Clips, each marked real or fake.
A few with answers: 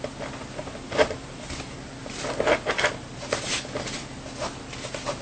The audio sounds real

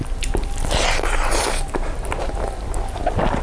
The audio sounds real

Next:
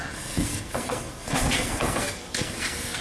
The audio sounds fake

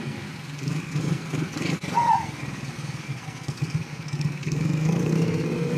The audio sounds fake